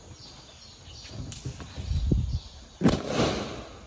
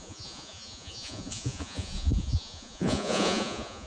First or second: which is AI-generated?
second